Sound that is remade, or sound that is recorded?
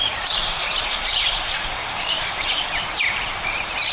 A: remade